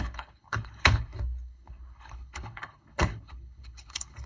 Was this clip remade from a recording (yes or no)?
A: yes